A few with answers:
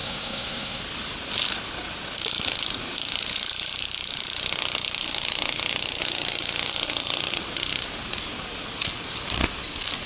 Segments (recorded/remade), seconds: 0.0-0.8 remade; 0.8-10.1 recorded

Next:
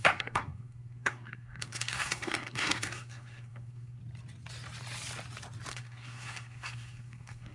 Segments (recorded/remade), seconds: 0.0-4.0 remade; 4.0-5.7 recorded; 5.7-7.5 remade

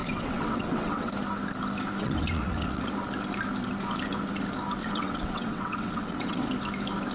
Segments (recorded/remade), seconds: 0.0-1.1 remade; 1.1-2.0 recorded; 2.0-2.9 remade; 2.9-4.8 recorded; 4.8-6.5 remade; 6.5-7.1 recorded

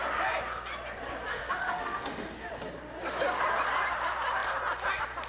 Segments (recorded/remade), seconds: 0.0-1.3 recorded; 1.3-2.5 remade; 2.5-5.3 recorded

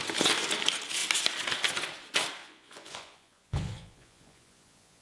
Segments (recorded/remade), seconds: 0.0-2.4 recorded; 2.4-5.0 remade

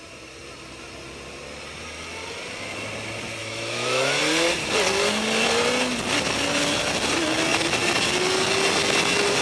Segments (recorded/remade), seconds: 0.0-3.4 recorded; 3.4-4.2 remade; 4.2-9.4 recorded

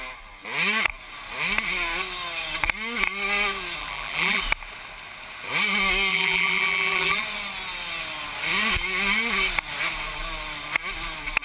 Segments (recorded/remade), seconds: 0.0-3.8 recorded; 3.8-4.4 remade; 4.4-6.1 recorded; 6.1-7.2 remade; 7.2-11.4 recorded

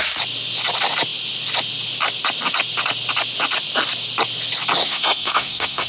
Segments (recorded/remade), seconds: 0.0-4.8 recorded; 4.8-5.9 remade